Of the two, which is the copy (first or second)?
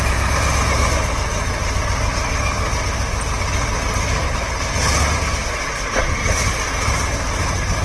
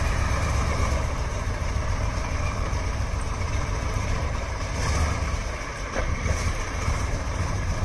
second